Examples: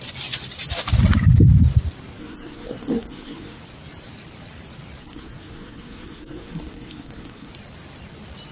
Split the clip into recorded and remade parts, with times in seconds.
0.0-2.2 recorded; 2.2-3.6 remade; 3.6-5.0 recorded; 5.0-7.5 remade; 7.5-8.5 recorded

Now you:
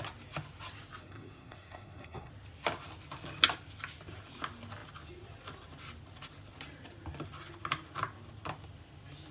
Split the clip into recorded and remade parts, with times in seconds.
0.0-1.0 recorded; 1.0-2.3 remade; 2.3-9.3 recorded

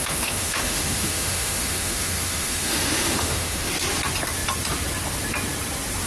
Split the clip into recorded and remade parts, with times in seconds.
0.0-3.7 remade; 3.7-6.1 recorded

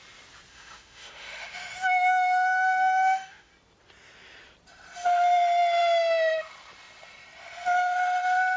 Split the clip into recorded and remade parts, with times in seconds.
0.0-0.5 recorded; 0.5-3.5 remade; 3.5-8.6 recorded

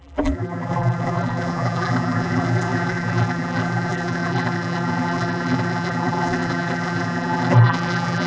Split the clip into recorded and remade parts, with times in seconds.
0.0-8.3 remade